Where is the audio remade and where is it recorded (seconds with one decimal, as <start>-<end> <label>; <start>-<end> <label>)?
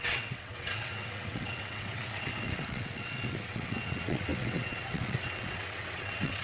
0.0-6.4 remade